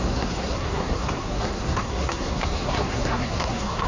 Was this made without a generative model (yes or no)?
no